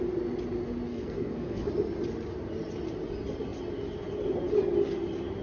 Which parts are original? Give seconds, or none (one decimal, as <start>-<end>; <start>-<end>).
0.0-0.9; 1.7-5.4